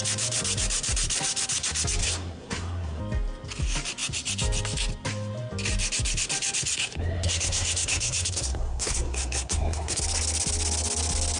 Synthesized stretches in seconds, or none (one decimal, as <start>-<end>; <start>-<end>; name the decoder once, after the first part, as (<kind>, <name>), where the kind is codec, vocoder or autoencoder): 2.0-3.0 (codec, SNAC); 6.8-10.0